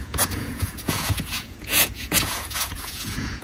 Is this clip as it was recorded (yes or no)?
no